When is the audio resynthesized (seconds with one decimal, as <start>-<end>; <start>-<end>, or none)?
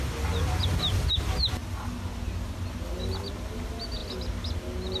none